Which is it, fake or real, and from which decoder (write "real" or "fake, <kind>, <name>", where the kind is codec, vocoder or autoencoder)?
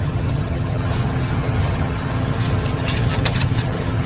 fake, vocoder, HiFi-GAN